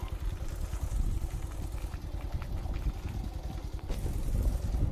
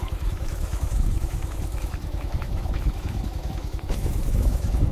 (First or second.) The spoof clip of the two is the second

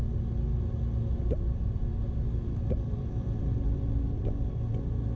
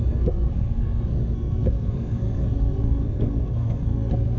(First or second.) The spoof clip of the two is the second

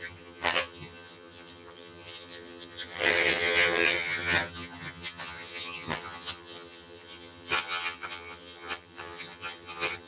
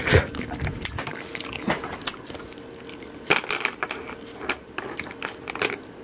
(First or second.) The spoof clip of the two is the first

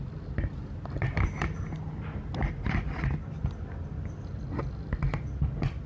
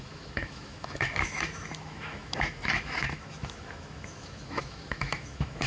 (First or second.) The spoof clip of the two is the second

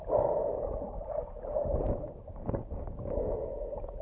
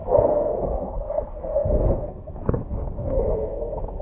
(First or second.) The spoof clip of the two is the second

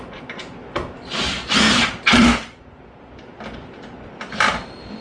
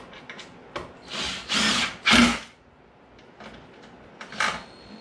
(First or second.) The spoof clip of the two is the first